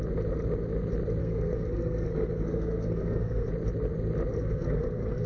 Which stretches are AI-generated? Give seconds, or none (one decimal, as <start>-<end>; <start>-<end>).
1.2-3.5; 4.4-5.3